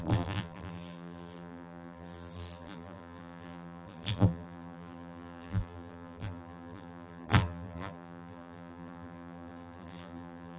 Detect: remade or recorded remade